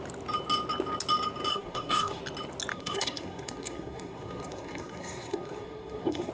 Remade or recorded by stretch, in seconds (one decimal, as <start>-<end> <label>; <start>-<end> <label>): 0.0-1.5 recorded; 1.5-2.2 remade; 2.2-2.7 recorded; 2.7-6.3 remade